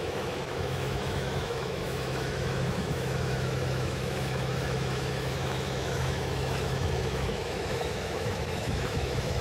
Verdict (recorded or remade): remade